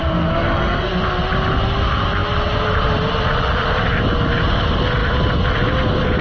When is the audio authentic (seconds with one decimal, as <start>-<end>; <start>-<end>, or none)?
0.9-6.2